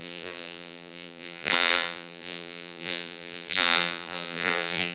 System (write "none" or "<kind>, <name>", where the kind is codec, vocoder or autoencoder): vocoder, BigVGAN v2